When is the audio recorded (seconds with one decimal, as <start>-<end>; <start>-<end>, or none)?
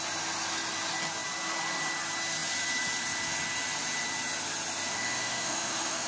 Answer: 0.0-4.9